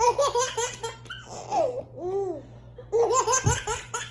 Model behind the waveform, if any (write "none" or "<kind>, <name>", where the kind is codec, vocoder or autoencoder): none